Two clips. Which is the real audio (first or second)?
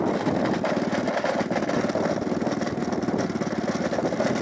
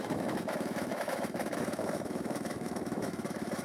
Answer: first